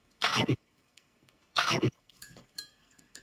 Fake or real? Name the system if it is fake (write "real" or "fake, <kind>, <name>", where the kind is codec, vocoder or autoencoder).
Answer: fake, codec, SNAC